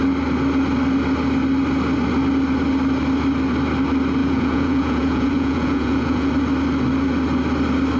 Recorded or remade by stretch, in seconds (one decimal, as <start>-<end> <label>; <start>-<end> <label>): 0.0-4.2 recorded; 4.2-6.3 remade; 6.3-8.0 recorded